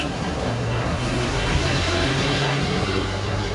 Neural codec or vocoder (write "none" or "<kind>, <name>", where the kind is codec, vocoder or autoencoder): codec, SNAC